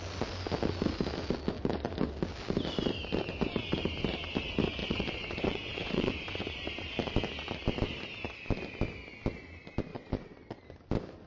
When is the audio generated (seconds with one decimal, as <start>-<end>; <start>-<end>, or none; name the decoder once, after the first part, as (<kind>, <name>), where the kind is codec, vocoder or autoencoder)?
4.8-6.1 (vocoder, WaveNeXt); 9.9-10.6